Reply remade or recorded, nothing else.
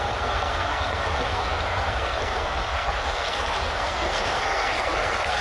remade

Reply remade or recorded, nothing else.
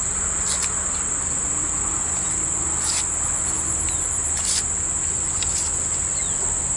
recorded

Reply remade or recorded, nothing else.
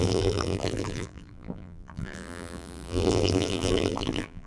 remade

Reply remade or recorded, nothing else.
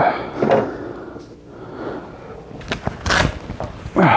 recorded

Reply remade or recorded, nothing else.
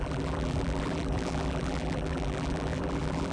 remade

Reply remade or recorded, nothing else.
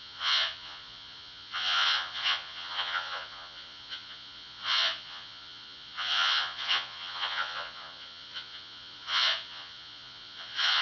remade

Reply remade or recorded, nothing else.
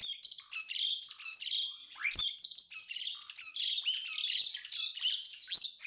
recorded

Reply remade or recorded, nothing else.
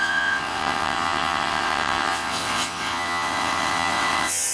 remade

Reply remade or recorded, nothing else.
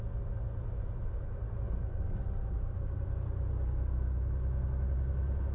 recorded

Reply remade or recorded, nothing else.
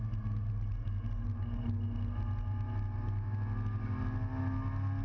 recorded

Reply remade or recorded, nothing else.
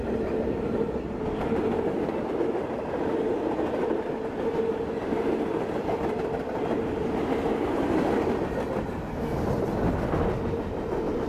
recorded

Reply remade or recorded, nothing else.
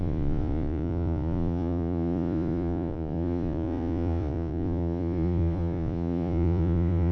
remade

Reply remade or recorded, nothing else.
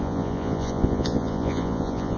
remade